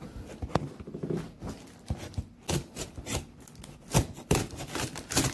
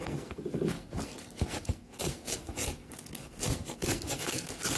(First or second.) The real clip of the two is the first